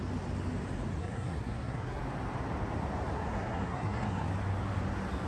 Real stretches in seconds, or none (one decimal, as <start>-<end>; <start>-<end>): 0.0-1.0; 2.0-3.1; 4.3-5.3